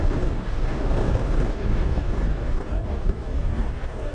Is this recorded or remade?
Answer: remade